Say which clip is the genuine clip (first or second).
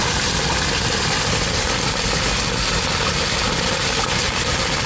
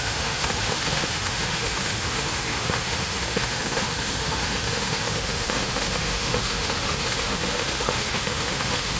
first